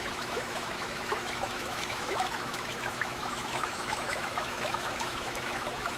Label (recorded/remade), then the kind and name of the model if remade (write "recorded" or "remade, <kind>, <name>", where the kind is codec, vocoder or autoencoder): remade, autoencoder, DAC-VAE